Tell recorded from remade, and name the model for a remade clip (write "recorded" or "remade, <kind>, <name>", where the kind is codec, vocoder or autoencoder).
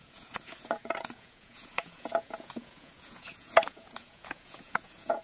remade, vocoder, Vocos